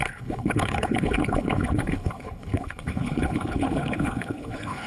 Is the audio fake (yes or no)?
yes